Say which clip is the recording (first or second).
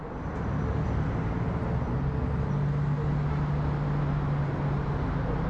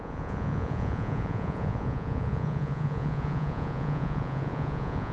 first